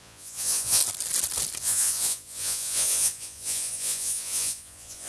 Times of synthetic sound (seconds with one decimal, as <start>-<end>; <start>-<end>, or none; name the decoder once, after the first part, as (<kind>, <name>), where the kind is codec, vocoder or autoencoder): 0.0-0.8 (vocoder, Vocos); 1.6-5.1